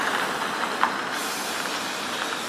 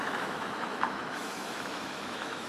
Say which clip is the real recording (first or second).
first